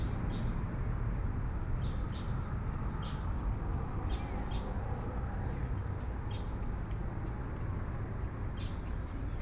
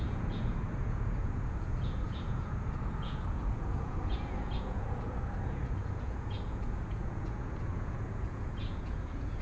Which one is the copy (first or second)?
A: second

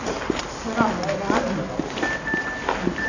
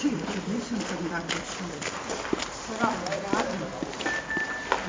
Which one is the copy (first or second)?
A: second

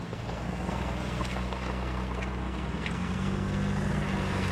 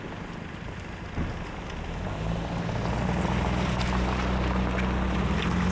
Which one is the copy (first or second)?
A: first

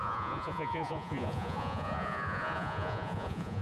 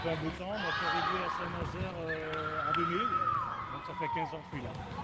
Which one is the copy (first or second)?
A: first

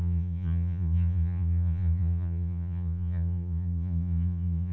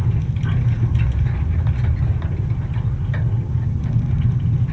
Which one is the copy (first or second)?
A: first